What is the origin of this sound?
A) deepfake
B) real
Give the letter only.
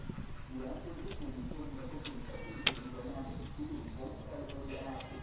B